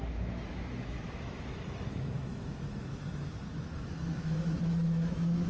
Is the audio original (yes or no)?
no